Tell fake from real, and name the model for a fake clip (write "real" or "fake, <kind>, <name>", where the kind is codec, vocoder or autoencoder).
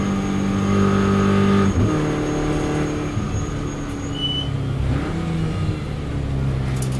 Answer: real